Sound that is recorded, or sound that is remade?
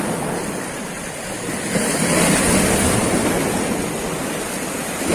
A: recorded